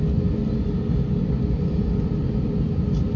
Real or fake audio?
real